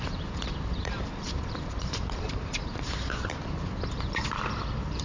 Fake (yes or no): yes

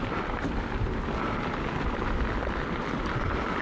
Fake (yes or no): no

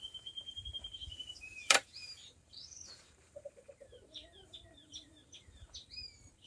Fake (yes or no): yes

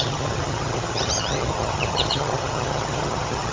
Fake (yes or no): yes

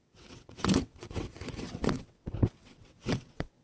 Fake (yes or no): yes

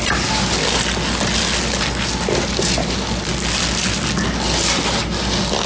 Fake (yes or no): no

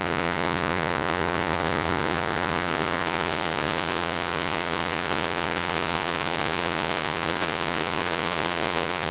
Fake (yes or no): yes